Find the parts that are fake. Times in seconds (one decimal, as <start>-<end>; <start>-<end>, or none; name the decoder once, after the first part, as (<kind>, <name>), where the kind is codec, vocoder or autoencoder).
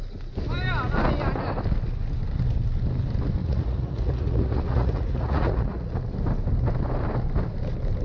3.4-6.0 (vocoder, Vocos)